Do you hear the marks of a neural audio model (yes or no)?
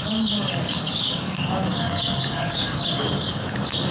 yes